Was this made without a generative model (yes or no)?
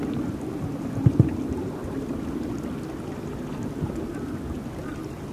yes